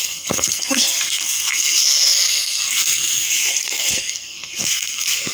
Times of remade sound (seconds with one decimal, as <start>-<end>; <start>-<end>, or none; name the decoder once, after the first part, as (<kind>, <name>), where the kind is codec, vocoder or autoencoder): 0.0-5.3 (codec, SNAC)

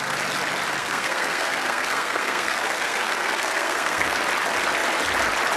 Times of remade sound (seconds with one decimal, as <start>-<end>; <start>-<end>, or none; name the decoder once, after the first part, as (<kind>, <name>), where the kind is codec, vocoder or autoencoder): 0.8-4.2 (codec, SNAC)

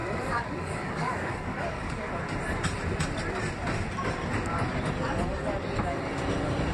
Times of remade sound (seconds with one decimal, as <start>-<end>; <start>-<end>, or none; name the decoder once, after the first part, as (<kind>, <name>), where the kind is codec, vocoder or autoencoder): 0.0-2.1 (codec, DAC)

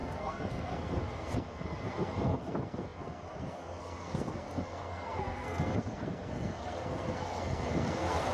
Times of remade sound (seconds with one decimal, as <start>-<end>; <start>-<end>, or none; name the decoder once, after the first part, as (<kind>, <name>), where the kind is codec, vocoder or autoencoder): 0.0-8.3 (codec, SNAC)

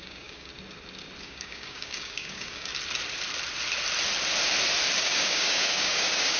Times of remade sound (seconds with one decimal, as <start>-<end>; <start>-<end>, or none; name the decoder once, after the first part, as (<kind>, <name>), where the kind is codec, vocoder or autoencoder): 0.0-0.5 (codec, DAC); 1.2-2.7; 5.0-6.4

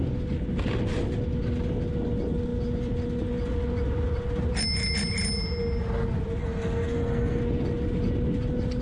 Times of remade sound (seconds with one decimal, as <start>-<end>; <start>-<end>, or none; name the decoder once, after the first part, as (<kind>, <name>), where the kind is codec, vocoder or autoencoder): 6.4-7.4 (codec, SNAC)

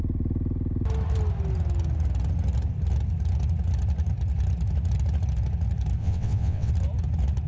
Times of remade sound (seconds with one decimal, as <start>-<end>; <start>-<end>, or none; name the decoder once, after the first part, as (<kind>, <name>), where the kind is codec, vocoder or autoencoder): 6.0-6.7 (vocoder, WaveNeXt)